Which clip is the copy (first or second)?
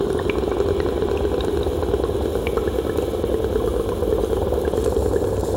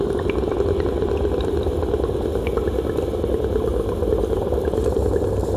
second